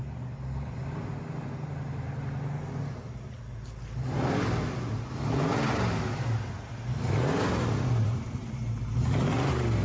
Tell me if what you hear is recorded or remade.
recorded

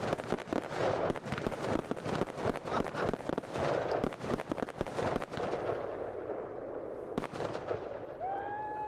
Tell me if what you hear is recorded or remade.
recorded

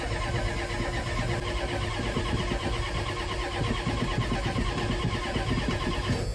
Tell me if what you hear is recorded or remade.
recorded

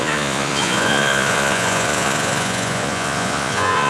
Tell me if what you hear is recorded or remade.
remade